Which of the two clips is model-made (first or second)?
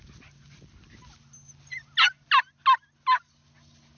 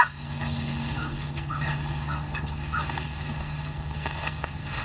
second